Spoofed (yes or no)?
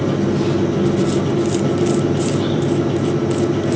no